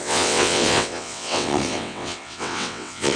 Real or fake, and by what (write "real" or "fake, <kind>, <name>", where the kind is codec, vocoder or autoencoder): fake, vocoder, WaveNeXt